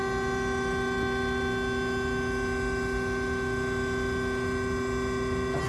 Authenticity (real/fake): real